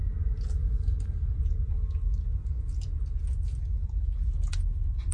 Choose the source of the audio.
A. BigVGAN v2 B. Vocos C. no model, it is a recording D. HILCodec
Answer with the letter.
C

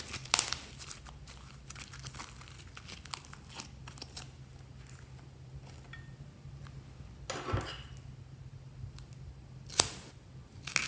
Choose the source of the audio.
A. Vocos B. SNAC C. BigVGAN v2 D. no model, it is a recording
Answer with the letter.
D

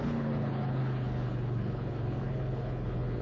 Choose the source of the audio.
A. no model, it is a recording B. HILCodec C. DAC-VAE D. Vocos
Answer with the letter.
B